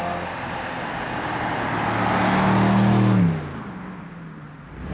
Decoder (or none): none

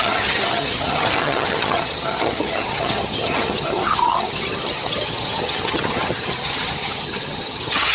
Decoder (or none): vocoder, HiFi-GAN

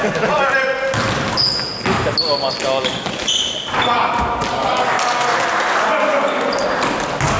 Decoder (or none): none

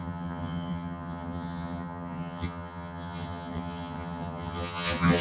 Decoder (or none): vocoder, HiFi-GAN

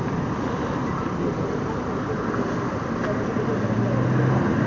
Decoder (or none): none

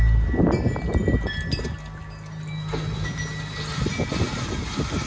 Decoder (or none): none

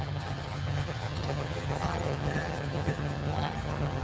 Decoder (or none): vocoder, HiFi-GAN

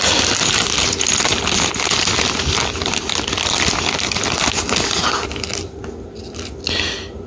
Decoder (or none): none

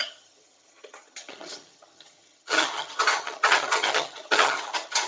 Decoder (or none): vocoder, HiFi-GAN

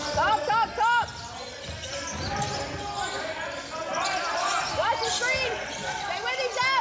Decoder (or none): none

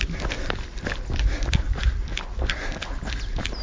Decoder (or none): none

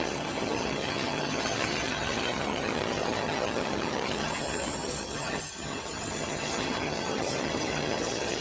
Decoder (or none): vocoder, HiFi-GAN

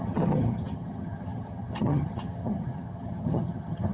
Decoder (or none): vocoder, HiFi-GAN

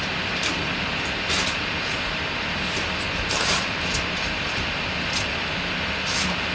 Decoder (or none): none